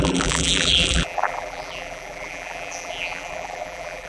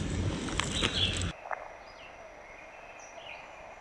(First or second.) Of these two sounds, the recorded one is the second